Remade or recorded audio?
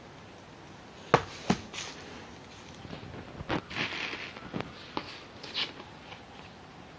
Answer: recorded